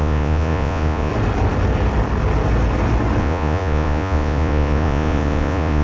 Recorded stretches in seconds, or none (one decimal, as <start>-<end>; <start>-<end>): 1.1-3.2

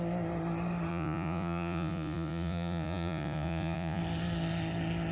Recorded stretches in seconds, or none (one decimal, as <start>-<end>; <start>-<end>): 0.0-0.9; 4.0-5.1